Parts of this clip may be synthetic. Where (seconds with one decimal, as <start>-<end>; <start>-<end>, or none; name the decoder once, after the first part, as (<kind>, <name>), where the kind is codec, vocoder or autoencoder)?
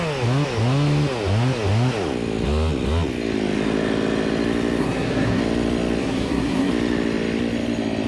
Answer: 4.8-5.4 (codec, SNAC); 6.0-6.7